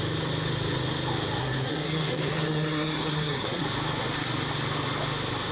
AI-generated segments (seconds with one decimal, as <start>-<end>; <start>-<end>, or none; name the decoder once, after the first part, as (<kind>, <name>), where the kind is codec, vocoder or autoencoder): 1.4-3.6 (codec, SNAC)